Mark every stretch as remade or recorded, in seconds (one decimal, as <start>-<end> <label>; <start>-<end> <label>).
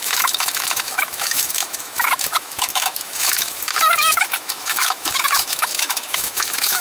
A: 0.0-6.8 remade